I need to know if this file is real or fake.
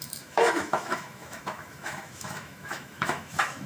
fake